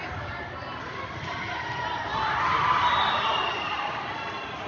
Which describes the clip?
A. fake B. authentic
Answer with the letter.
A